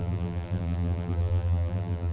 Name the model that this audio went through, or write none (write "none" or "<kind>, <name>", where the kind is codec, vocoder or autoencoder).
vocoder, BigVGAN v2